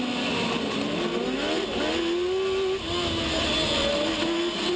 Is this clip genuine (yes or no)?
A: yes